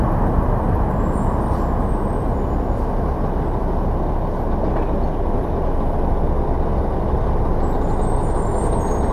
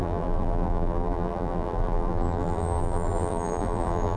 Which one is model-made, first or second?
second